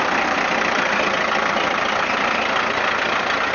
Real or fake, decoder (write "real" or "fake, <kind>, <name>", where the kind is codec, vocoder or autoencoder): real